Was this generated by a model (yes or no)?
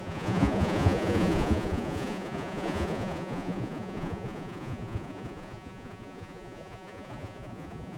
yes